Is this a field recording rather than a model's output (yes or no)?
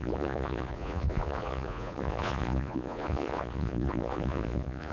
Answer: no